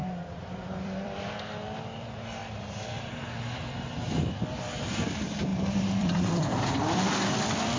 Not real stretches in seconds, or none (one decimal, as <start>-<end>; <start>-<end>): 0.0-1.2; 5.5-7.8